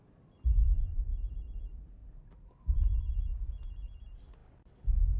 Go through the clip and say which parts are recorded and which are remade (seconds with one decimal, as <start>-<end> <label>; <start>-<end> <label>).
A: 0.0-2.0 recorded; 2.0-3.1 remade; 3.1-5.2 recorded